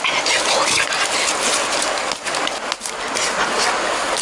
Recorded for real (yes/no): yes